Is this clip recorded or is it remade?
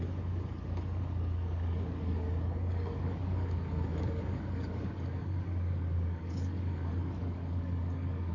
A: remade